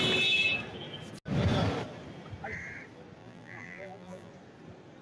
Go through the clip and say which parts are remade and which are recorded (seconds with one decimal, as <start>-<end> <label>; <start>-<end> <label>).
0.0-3.2 recorded; 3.2-4.3 remade; 4.3-5.0 recorded